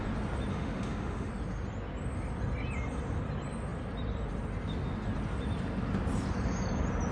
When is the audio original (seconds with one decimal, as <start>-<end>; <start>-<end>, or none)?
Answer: 0.0-0.5; 1.3-7.1